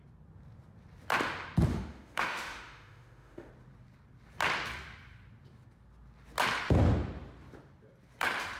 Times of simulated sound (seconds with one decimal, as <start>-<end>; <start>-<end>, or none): 1.7-3.5